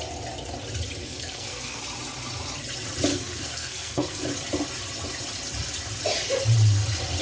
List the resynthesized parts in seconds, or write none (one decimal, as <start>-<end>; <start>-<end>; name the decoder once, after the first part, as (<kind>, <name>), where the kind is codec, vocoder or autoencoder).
1.0-1.8 (codec, SNAC); 3.1-4.2